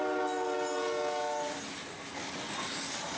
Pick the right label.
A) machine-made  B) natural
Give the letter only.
B